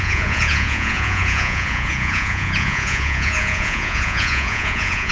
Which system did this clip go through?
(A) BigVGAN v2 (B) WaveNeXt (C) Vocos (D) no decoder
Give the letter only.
C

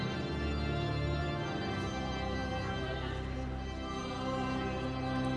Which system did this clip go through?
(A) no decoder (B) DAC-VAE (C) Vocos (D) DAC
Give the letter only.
A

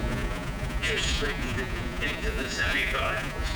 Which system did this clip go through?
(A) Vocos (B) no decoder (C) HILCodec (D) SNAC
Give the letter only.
A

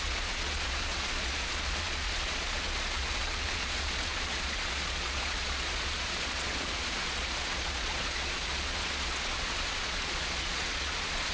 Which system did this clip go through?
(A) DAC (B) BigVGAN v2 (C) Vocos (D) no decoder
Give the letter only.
C